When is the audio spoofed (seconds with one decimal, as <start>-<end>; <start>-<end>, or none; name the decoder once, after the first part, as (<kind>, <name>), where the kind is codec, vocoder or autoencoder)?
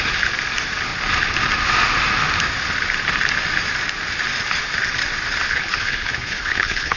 5.5-7.0 (codec, HILCodec)